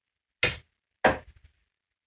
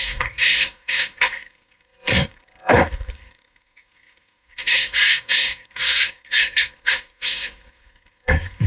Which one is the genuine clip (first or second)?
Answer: first